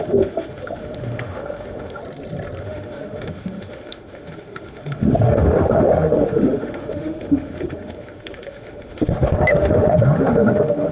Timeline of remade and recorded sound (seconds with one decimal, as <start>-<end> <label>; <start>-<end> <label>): 0.0-2.0 remade; 2.0-2.6 recorded; 2.6-10.9 remade